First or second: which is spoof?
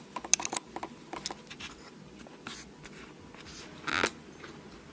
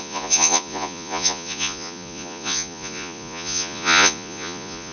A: second